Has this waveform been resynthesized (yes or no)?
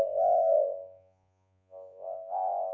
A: yes